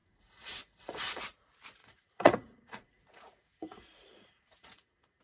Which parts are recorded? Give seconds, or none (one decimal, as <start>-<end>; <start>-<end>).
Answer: 1.2-1.8